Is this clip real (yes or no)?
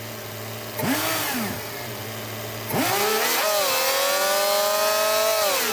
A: yes